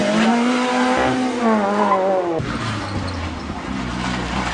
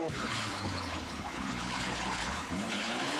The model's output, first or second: second